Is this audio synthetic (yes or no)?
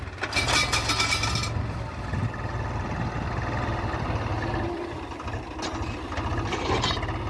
no